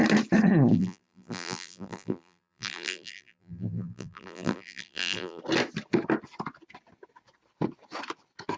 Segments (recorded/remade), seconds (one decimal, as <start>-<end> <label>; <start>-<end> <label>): 0.0-0.7 recorded; 0.7-5.4 remade; 5.4-8.6 recorded